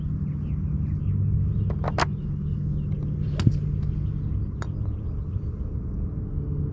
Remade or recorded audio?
recorded